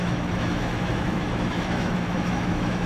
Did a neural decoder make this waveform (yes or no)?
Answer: yes